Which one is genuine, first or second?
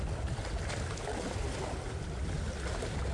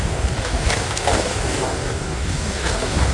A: first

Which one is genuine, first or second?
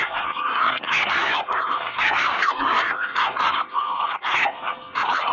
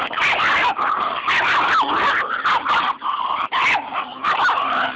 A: second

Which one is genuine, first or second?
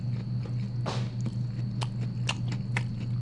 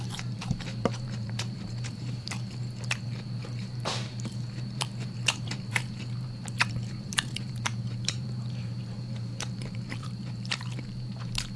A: first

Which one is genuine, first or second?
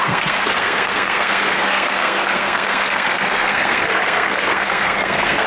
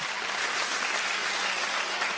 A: second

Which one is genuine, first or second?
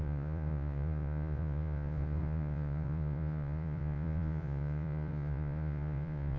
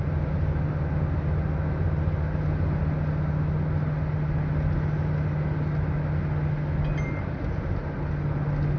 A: second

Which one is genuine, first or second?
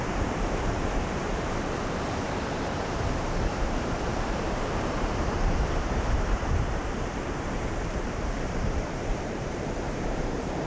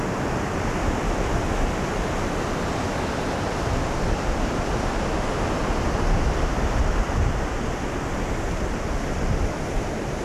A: second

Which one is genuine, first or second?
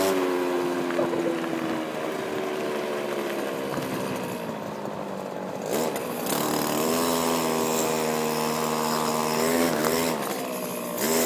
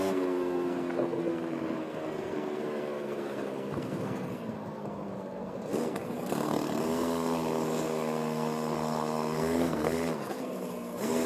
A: first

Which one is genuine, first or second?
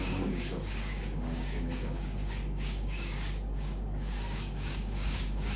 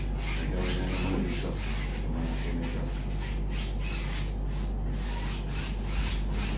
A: second